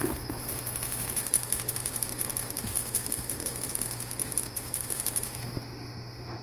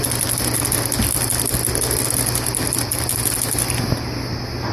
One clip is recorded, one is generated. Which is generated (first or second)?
first